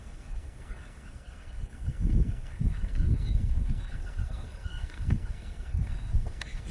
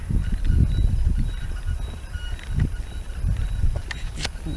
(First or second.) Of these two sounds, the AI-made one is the first